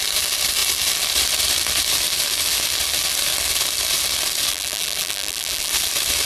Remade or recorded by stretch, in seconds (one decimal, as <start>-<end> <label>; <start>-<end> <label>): 0.0-4.5 recorded; 4.5-5.7 remade; 5.7-6.3 recorded